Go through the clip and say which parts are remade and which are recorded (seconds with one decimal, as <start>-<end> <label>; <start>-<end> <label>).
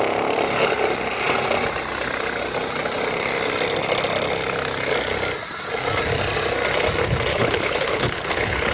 0.0-7.3 recorded; 7.3-8.7 remade